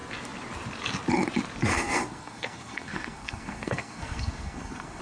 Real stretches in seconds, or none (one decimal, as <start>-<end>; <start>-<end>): 0.0-1.7